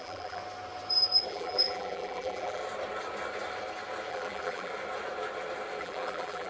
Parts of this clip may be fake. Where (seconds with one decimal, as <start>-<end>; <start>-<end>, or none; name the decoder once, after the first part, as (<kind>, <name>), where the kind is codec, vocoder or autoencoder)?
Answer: 0.0-0.4 (vocoder, BigVGAN v2); 1.3-2.6; 4.1-4.7; 5.8-6.5